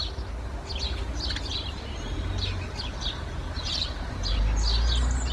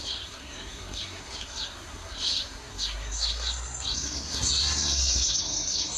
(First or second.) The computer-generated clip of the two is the second